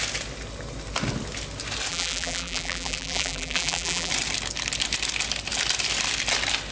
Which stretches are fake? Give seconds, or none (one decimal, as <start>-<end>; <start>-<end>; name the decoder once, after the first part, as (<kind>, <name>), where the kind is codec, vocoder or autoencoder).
1.9-4.1 (vocoder, BigVGAN v2)